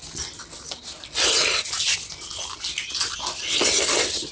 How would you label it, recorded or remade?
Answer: recorded